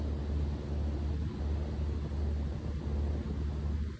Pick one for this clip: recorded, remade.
recorded